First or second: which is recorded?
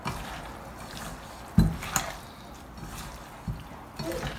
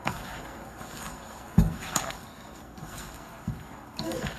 first